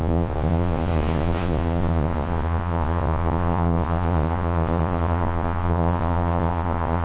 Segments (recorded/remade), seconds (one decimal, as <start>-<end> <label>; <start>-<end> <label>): 0.0-7.0 remade